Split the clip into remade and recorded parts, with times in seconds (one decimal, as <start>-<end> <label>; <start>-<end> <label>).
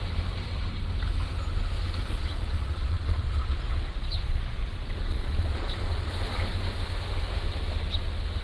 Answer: 0.0-2.0 recorded; 2.0-6.1 remade; 6.1-8.4 recorded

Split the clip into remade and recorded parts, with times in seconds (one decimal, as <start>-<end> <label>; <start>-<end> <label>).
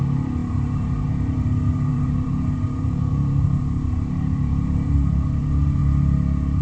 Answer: 0.0-5.8 remade; 5.8-6.6 recorded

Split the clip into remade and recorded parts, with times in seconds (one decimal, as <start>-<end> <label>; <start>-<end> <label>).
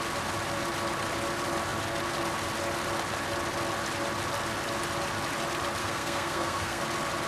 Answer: 0.0-5.8 recorded; 5.8-6.8 remade; 6.8-7.3 recorded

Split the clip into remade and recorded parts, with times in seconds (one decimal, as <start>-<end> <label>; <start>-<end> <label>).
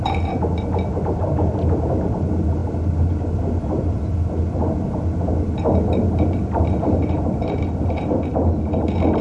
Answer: 0.0-9.2 recorded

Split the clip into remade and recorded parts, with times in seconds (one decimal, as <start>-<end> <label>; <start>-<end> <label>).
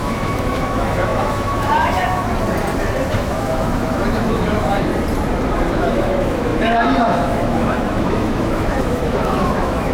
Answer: 0.0-2.2 remade; 2.2-3.1 recorded; 3.1-4.9 remade; 4.9-5.7 recorded; 5.7-9.9 remade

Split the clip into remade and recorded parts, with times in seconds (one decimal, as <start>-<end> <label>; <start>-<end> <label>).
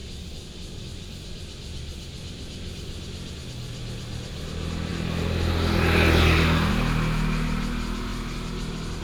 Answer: 0.0-9.0 recorded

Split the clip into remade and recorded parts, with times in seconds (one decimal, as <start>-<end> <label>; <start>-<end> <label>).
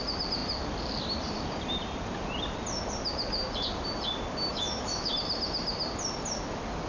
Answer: 0.0-4.5 recorded; 4.5-5.1 remade; 5.1-6.9 recorded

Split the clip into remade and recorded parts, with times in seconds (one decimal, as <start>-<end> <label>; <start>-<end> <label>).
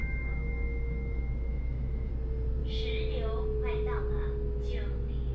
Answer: 0.0-2.1 remade; 2.1-5.3 recorded